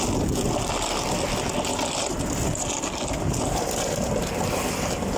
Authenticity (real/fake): real